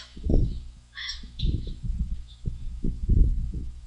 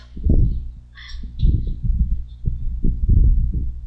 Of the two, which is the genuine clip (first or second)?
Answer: second